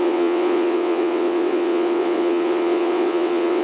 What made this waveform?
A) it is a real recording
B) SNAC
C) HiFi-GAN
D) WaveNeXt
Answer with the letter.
D